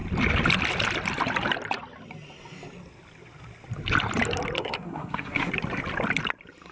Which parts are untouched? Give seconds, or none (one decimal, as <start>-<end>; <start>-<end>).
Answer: 0.0-4.6; 5.5-6.7